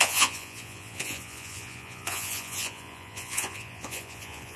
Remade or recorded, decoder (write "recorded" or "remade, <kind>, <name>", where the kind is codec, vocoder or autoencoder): remade, vocoder, Vocos